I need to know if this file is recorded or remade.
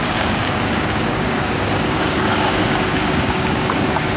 remade